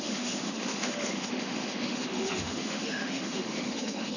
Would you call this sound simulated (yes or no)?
yes